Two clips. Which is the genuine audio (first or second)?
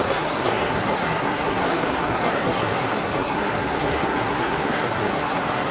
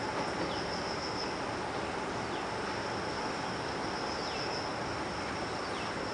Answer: second